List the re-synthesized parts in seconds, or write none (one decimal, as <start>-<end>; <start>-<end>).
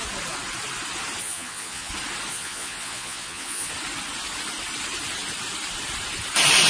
1.2-1.9; 2.3-3.7